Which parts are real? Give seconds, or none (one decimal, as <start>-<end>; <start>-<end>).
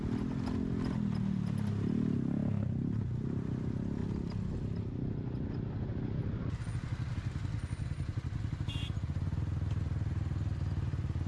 0.0-11.3